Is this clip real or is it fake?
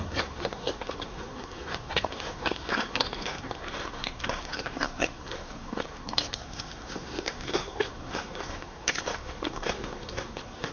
fake